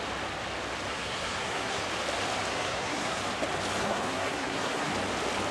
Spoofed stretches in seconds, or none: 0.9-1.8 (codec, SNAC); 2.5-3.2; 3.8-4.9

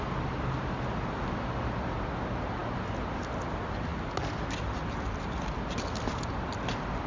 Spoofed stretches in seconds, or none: none

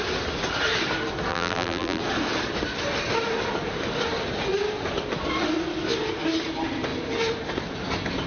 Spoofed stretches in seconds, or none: 1.3-2.0 (vocoder, BigVGAN v2)

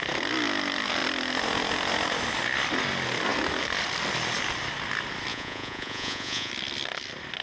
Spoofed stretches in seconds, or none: 5.3-6.5 (vocoder, Vocos)

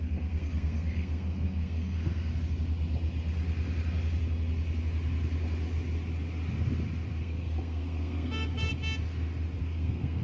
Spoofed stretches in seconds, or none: 0.0-2.3 (codec, SNAC); 7.2-8.7; 9.6-10.2